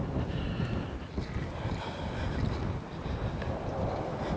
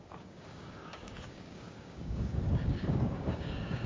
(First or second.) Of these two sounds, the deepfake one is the second